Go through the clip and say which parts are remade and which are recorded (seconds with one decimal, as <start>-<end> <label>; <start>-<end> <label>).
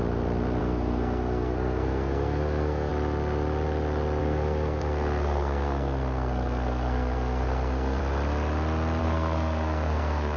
0.0-0.6 recorded; 0.6-2.9 remade; 2.9-4.2 recorded; 4.2-8.0 remade; 8.0-9.0 recorded; 9.0-10.4 remade